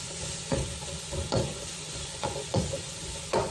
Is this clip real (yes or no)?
no